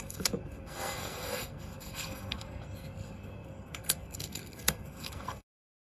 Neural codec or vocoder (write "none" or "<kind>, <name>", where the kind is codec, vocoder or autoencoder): codec, SNAC